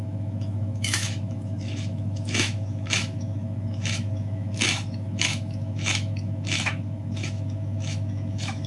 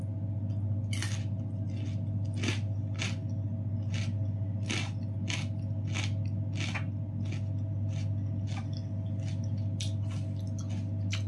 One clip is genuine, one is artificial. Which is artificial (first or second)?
first